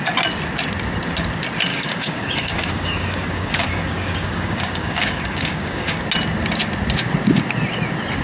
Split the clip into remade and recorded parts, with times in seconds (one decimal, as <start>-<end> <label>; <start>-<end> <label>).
0.0-1.7 recorded; 1.7-6.0 remade; 6.0-8.2 recorded